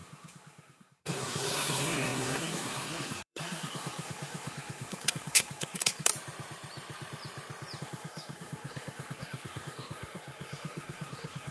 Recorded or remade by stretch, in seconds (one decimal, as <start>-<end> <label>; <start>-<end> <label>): 0.0-6.1 remade; 6.1-7.8 recorded; 7.8-11.5 remade